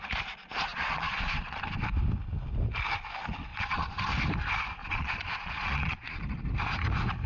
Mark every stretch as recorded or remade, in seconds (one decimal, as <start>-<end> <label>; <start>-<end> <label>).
0.0-0.7 recorded; 0.7-1.6 remade; 1.6-3.5 recorded; 3.5-4.1 remade; 4.1-4.8 recorded; 4.8-6.2 remade; 6.2-7.3 recorded